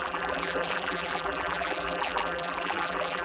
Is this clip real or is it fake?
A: fake